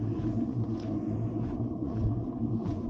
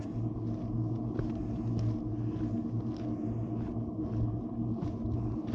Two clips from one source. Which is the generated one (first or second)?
first